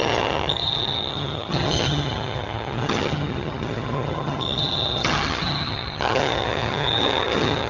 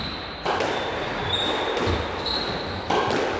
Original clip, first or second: second